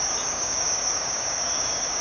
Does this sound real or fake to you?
fake